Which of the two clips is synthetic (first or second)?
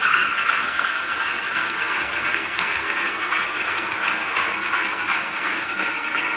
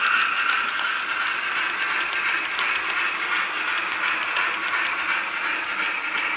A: first